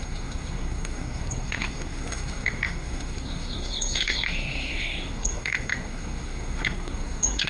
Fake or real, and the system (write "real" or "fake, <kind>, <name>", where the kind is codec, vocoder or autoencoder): fake, codec, SNAC